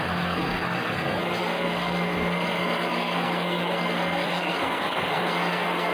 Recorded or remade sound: remade